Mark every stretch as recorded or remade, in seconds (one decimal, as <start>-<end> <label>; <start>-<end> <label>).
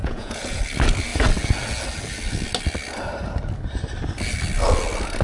0.0-0.6 remade; 0.6-5.2 recorded